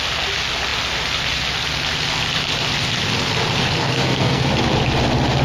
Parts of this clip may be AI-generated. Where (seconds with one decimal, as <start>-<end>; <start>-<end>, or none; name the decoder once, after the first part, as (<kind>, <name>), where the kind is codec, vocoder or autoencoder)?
3.6-4.5 (codec, SNAC)